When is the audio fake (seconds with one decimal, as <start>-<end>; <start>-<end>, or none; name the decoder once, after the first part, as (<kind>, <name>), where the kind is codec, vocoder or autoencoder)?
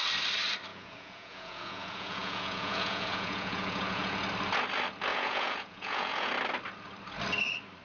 0.7-4.2 (vocoder, Vocos); 5.1-6.3